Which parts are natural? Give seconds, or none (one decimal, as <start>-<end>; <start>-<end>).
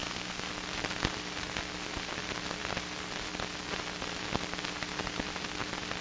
0.5-6.0